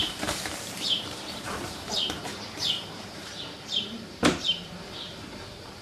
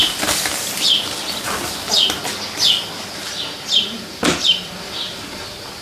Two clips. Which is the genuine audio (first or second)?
second